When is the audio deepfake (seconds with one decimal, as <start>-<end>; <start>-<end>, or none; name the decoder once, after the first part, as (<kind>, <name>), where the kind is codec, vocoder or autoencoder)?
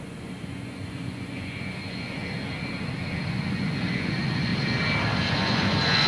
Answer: 0.0-2.2 (vocoder, Vocos); 3.3-4.5; 5.3-6.1